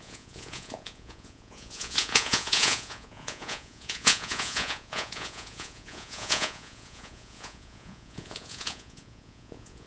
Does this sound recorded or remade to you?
remade